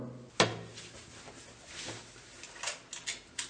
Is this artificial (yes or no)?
no